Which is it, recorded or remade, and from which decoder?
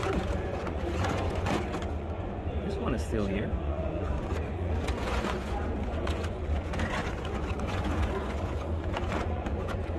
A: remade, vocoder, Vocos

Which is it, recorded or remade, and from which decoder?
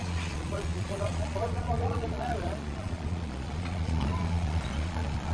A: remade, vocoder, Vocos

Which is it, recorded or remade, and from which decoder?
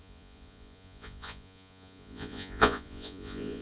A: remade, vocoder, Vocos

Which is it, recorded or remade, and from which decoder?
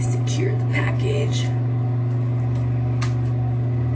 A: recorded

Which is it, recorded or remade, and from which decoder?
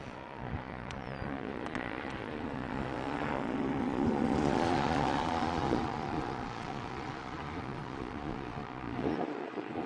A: remade, vocoder, Vocos